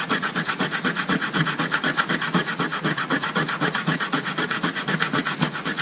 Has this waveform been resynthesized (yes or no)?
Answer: yes